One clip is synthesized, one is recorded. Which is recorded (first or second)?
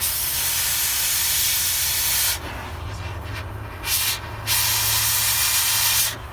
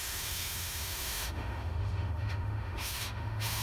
first